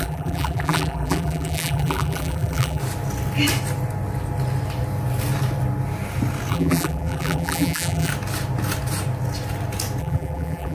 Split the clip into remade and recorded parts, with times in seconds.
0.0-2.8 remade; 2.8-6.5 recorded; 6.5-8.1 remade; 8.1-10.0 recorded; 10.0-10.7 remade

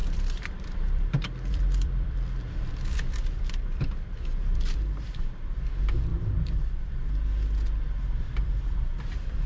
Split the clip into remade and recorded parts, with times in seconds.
0.0-2.7 remade; 2.7-6.1 recorded; 6.1-6.9 remade; 6.9-9.5 recorded

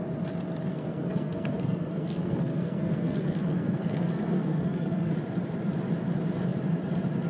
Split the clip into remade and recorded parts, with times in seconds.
0.0-0.7 recorded; 0.7-5.1 remade; 5.1-7.3 recorded

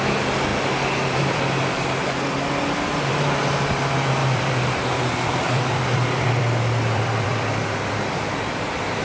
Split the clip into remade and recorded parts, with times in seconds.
0.0-4.2 recorded; 4.2-8.3 remade; 8.3-9.0 recorded

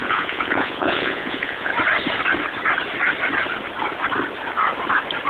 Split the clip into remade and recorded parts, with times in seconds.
0.0-1.7 remade; 1.7-5.3 recorded